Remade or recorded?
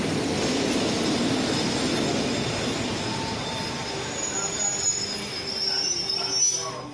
recorded